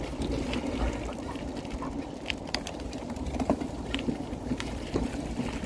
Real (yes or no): no